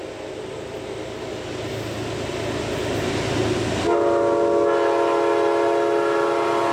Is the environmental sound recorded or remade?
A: recorded